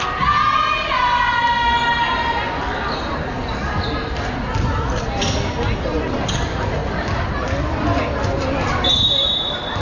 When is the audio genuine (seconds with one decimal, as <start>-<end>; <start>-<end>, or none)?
0.0-9.8